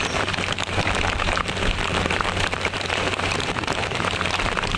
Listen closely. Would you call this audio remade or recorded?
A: remade